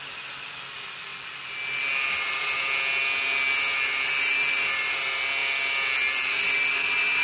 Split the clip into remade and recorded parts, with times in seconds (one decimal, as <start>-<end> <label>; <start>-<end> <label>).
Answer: 0.0-7.2 recorded